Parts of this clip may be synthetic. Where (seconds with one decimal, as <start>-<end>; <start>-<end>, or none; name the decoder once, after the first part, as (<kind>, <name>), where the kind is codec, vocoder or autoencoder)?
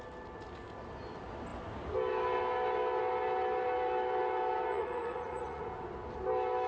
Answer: 4.7-5.6 (vocoder, Vocos)